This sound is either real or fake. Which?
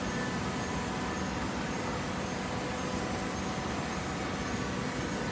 real